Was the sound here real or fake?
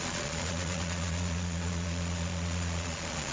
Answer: fake